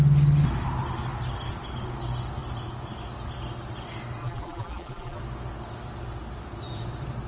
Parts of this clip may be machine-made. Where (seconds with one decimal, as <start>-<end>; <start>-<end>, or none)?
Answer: 4.2-5.2